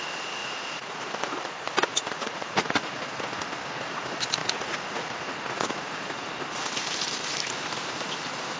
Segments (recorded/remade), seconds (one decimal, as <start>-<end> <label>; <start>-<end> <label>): 0.0-0.4 recorded; 0.4-1.0 remade; 1.0-1.9 recorded; 1.9-3.4 remade; 3.4-4.4 recorded; 4.4-6.3 remade; 6.3-8.6 recorded